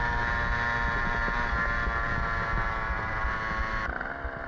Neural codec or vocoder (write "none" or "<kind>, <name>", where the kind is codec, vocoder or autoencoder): none